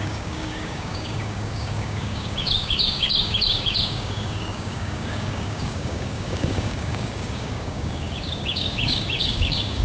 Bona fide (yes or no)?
no